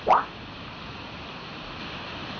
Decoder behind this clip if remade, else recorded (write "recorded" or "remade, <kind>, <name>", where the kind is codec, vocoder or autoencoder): recorded